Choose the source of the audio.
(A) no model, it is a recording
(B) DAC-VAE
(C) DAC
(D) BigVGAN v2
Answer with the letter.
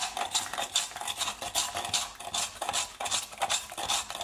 A